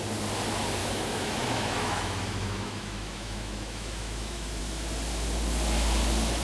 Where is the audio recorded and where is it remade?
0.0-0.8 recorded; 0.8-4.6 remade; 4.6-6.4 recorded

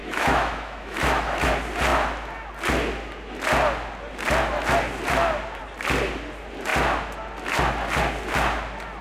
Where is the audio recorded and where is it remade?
0.0-1.5 remade; 1.5-9.0 recorded

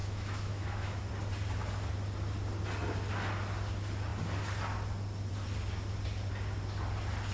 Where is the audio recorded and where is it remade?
0.0-1.1 remade; 1.1-7.3 recorded

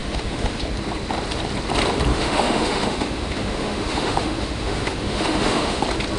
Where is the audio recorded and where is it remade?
0.0-0.6 remade; 0.6-2.1 recorded; 2.1-5.8 remade; 5.8-6.2 recorded

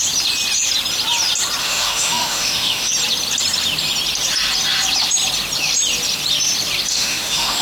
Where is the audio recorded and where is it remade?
0.0-1.6 recorded; 1.6-2.9 remade; 2.9-6.9 recorded; 6.9-7.6 remade

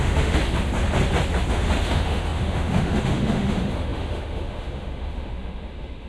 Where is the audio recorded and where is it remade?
0.0-0.4 remade; 0.4-1.5 recorded; 1.5-6.1 remade

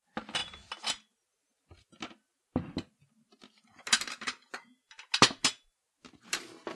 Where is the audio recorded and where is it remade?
0.0-6.7 recorded